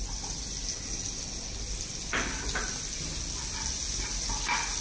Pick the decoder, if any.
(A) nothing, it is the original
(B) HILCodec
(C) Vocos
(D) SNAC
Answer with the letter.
A